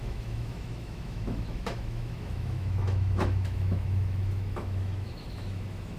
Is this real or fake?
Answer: fake